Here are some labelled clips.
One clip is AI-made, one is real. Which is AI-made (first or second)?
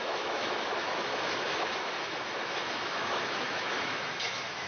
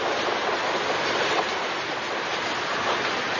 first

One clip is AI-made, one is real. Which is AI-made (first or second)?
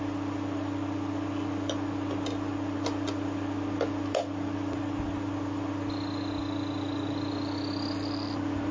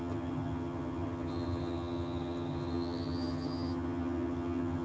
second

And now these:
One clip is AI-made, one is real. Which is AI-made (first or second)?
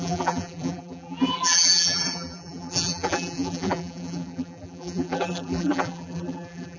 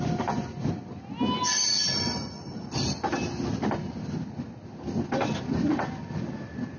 first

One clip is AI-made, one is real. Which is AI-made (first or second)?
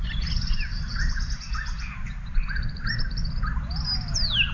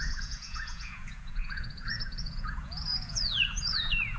second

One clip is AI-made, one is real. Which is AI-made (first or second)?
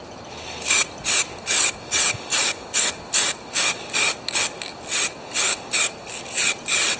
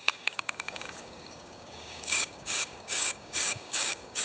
second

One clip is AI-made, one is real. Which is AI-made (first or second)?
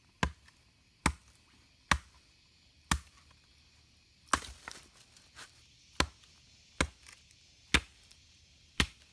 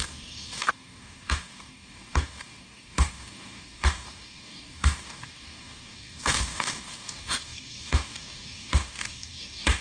second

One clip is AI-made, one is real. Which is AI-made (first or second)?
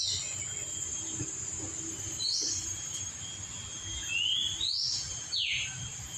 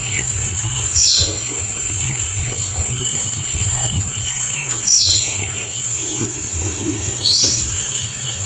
second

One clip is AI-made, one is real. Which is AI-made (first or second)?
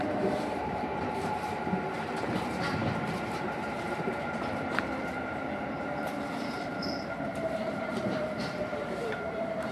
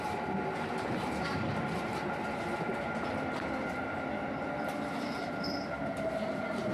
first